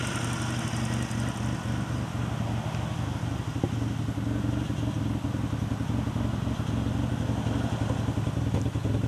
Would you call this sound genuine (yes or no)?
yes